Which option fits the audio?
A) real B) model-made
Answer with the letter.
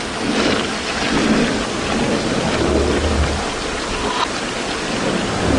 A